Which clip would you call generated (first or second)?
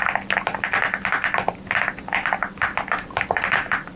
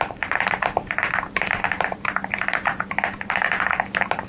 second